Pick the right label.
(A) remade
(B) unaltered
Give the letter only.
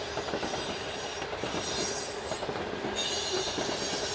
B